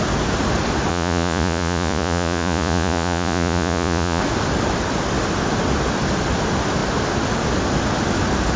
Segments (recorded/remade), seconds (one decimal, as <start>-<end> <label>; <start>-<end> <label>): 0.0-0.9 recorded; 0.9-4.2 remade; 4.2-8.6 recorded